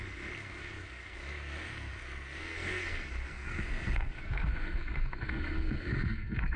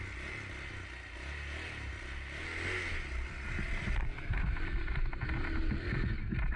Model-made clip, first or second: first